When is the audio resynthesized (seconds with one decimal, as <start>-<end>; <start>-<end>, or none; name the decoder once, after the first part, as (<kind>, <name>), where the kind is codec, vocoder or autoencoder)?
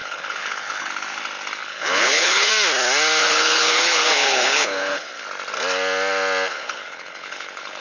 0.0-0.9 (codec, HILCodec); 1.6-2.5; 3.2-5.1; 6.5-7.8